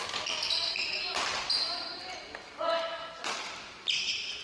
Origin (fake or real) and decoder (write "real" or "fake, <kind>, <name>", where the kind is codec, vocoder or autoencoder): real